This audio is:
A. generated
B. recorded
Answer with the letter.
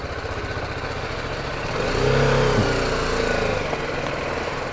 B